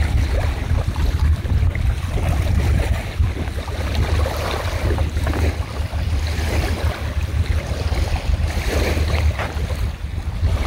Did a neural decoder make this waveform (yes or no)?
no